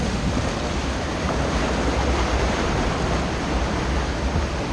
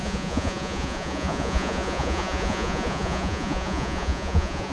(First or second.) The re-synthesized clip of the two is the second